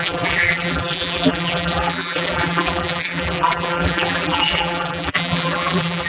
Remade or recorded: remade